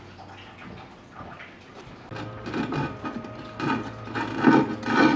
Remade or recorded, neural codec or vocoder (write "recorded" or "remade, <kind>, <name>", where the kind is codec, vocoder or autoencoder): recorded